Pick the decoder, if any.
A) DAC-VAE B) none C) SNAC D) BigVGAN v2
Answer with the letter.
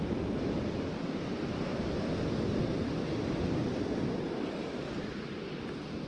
B